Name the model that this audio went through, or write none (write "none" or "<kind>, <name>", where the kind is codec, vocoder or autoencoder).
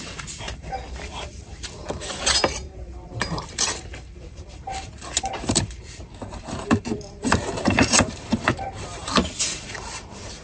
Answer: vocoder, BigVGAN v2